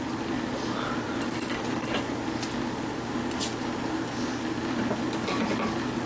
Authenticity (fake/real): real